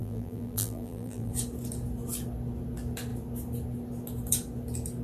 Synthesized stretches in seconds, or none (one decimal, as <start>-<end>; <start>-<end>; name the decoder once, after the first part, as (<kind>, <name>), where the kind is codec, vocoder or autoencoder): 0.0-1.3 (vocoder, BigVGAN v2)

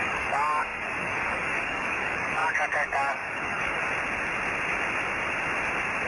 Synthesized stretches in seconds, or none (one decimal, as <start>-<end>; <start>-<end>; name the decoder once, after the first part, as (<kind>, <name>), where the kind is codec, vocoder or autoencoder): 0.0-3.8 (codec, DAC)

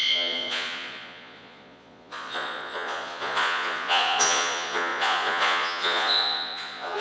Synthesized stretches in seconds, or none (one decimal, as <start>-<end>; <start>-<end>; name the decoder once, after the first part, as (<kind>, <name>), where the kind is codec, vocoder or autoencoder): 0.0-7.0 (vocoder, Vocos)

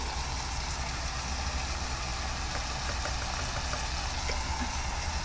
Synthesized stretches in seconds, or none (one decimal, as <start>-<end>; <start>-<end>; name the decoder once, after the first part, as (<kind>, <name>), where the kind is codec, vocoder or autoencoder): none

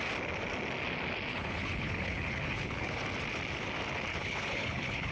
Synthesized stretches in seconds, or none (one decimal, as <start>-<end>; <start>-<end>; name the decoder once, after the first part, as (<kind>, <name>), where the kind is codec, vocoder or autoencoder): 1.3-3.0 (codec, HILCodec); 4.1-5.1

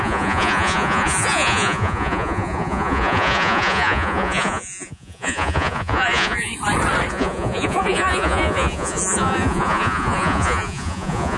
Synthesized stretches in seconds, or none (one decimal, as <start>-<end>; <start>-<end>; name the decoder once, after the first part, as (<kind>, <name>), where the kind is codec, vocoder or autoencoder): 0.0-6.5 (vocoder, Vocos); 7.1-11.4

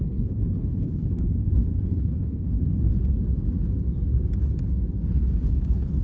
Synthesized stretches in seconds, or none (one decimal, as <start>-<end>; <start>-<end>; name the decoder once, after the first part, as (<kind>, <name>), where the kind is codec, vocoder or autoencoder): 0.0-2.9 (codec, HILCodec); 5.1-6.0

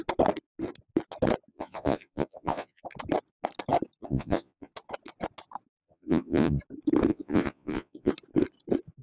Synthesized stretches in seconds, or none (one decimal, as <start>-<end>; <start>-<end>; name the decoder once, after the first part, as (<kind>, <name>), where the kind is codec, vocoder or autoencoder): 1.5-2.8 (vocoder, Vocos); 4.0-4.7; 5.8-6.6; 7.1-8.1